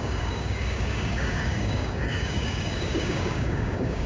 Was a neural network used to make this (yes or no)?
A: yes